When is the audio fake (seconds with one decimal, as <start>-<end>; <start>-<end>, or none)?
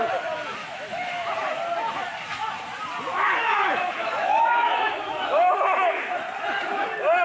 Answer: 0.6-1.3; 3.1-6.2